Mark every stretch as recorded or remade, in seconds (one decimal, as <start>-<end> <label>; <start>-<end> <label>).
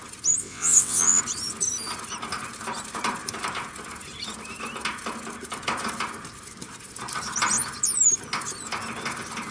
0.0-0.4 recorded; 0.4-1.2 remade; 1.2-9.5 recorded